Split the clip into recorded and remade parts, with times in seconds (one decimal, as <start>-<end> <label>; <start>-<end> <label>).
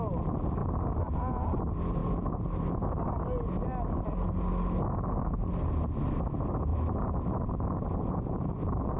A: 0.0-6.7 recorded; 6.7-8.4 remade; 8.4-9.0 recorded